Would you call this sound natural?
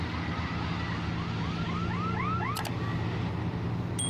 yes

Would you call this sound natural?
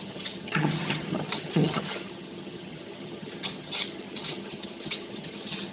no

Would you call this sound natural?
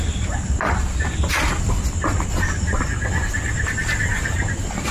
yes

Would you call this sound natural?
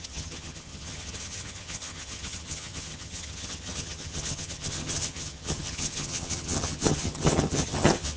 no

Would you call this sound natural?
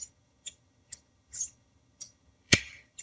no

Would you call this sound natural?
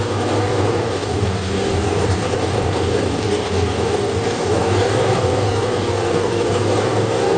no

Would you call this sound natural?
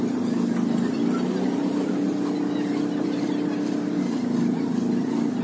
yes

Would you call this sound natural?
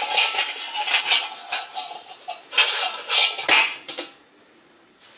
yes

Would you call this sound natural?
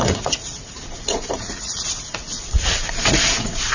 no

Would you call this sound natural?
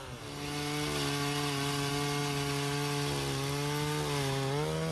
yes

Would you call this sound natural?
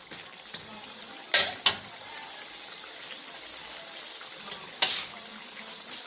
yes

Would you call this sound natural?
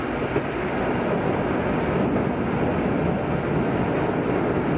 yes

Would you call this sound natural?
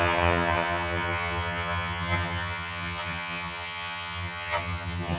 no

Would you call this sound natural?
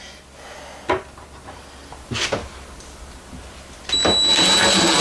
yes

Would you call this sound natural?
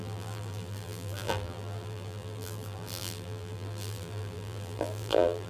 no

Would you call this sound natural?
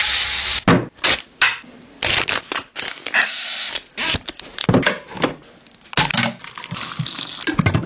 yes